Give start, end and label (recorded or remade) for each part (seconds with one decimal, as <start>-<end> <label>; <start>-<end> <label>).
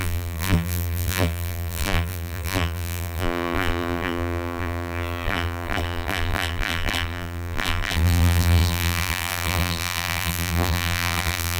0.0-11.6 remade